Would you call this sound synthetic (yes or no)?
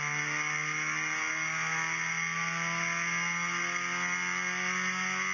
no